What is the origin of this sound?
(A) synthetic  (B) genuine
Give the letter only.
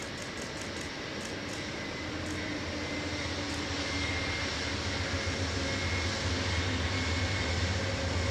B